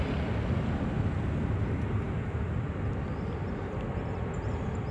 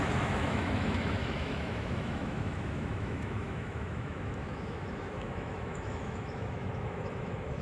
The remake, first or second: second